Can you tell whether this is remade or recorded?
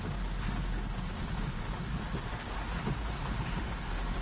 recorded